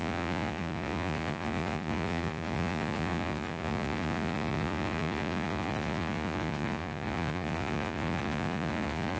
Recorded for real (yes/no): no